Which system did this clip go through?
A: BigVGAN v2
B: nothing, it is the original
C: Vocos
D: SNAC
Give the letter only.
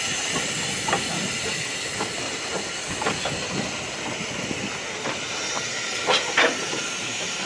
B